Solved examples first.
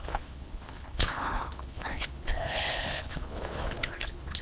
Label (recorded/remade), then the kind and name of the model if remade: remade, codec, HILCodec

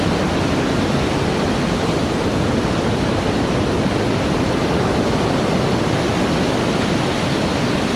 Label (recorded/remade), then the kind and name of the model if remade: recorded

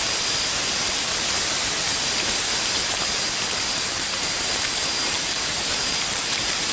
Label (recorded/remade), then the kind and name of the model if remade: recorded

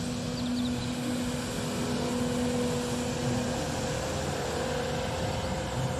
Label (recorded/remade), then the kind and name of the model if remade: recorded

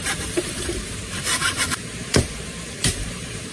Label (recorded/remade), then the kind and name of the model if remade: remade, vocoder, BigVGAN v2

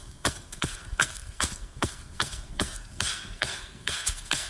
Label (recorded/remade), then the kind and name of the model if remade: remade, codec, SNAC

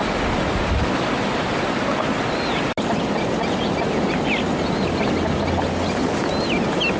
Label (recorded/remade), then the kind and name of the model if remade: recorded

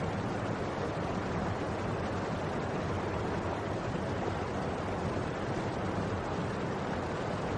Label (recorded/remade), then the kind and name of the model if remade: recorded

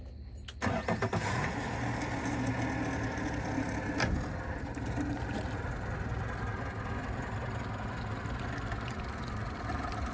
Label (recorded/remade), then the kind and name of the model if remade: recorded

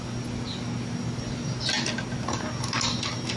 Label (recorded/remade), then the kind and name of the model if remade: recorded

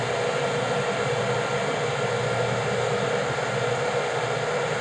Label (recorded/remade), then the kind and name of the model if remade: recorded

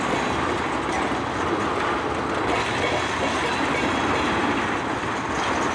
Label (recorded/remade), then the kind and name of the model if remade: recorded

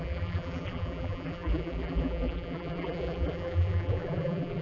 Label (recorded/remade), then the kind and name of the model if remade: remade, vocoder, BigVGAN v2